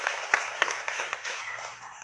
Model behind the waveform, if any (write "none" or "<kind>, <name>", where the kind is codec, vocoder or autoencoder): codec, SNAC